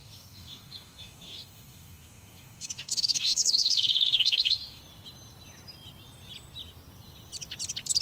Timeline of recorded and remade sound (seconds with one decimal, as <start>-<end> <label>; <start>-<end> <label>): 0.0-4.8 remade; 4.8-8.0 recorded

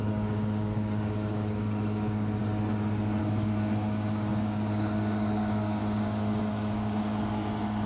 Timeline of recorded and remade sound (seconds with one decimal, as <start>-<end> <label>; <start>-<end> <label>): 0.0-2.4 remade; 2.4-3.2 recorded; 3.2-7.9 remade

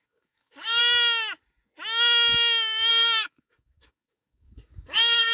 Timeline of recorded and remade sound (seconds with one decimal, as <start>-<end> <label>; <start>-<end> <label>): 0.0-0.8 remade; 0.8-2.9 recorded; 2.9-5.3 remade

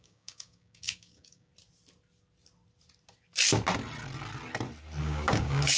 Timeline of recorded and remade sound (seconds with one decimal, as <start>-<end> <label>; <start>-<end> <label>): 0.0-1.5 remade; 1.5-5.0 recorded; 5.0-5.8 remade

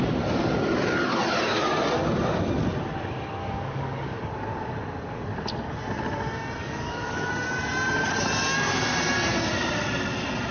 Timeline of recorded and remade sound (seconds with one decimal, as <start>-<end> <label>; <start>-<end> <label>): 0.0-3.4 recorded; 3.4-4.2 remade; 4.2-6.6 recorded; 6.6-7.3 remade; 7.3-10.5 recorded

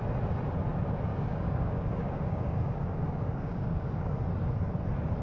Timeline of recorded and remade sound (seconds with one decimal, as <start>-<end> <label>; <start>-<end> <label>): 0.0-1.1 recorded; 1.1-4.2 remade; 4.2-5.2 recorded

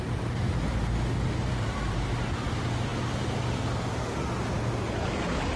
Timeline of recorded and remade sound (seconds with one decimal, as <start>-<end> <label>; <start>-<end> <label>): 0.0-5.6 recorded

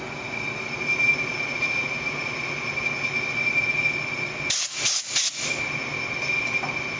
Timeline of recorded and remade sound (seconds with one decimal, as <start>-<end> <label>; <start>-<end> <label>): 0.0-7.0 recorded